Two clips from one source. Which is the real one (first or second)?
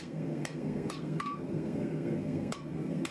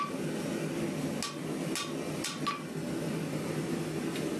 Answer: second